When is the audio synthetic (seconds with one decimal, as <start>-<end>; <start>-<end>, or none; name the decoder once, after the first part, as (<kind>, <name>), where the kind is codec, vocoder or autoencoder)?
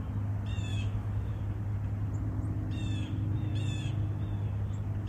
0.7-1.4 (autoencoder, DAC-VAE)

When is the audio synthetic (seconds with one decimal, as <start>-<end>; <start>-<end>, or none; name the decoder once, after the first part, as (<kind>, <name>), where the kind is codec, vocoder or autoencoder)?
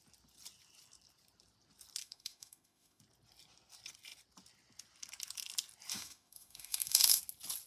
2.0-3.0 (autoencoder, DAC-VAE); 5.9-7.2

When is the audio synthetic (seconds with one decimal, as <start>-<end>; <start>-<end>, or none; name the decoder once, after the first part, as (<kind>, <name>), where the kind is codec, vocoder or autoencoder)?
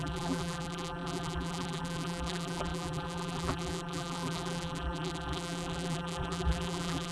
0.0-7.1 (vocoder, BigVGAN v2)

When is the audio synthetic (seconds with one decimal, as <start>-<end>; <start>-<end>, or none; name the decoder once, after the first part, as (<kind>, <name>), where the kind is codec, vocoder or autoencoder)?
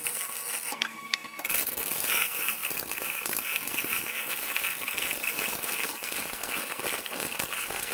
0.0-7.9 (codec, SNAC)